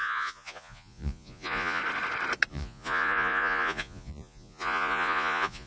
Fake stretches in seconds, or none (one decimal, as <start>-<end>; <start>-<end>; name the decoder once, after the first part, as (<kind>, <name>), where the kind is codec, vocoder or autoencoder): 0.0-1.8 (vocoder, Vocos); 2.5-5.7